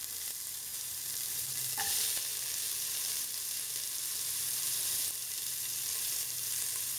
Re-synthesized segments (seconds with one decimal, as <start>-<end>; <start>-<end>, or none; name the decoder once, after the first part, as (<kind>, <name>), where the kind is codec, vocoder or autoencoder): 0.7-1.9 (vocoder, BigVGAN v2)